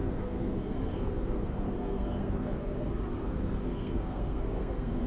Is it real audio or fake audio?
fake